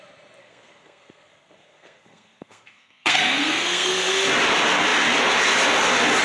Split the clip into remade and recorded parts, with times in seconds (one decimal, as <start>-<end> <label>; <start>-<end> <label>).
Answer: 0.0-0.4 recorded; 0.4-4.1 remade; 4.1-6.2 recorded